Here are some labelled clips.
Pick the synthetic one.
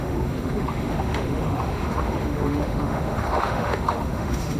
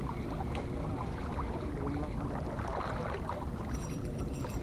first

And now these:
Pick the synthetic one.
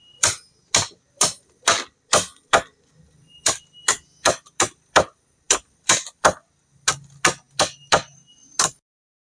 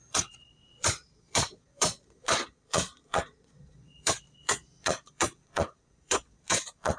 second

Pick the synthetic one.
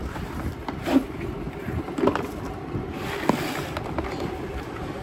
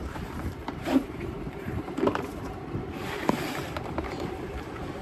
second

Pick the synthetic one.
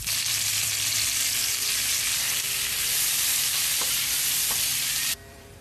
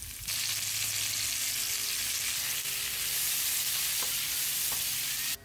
first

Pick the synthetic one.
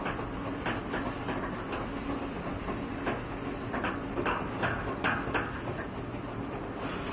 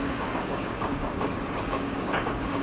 second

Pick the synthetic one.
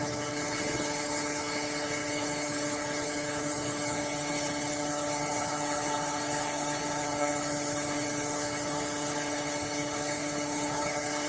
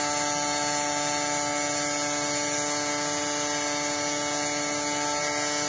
first